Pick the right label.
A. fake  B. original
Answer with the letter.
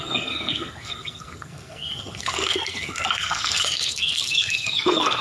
A